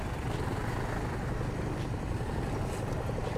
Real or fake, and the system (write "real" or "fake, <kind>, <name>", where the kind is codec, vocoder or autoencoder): real